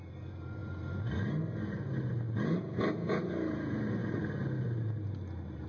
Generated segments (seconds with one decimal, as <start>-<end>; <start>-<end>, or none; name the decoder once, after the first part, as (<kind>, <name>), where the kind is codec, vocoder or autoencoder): none